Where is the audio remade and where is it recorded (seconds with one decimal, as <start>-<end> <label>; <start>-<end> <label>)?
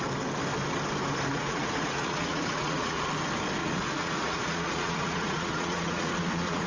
0.0-1.3 recorded; 1.3-3.0 remade; 3.0-3.6 recorded; 3.6-6.7 remade